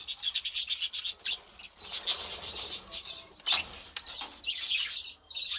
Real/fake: real